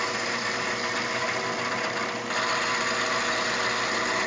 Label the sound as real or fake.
real